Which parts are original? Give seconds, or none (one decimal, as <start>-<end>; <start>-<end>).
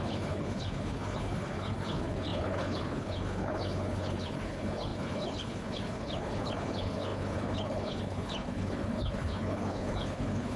none